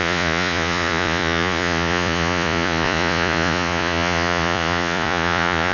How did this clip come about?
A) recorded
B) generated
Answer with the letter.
B